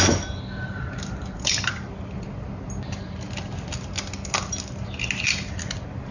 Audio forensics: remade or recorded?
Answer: recorded